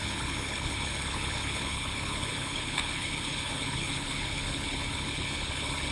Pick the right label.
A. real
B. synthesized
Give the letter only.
B